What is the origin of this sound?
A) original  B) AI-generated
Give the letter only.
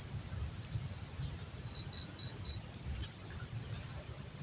A